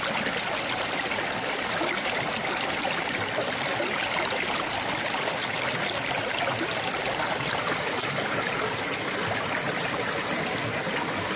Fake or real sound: real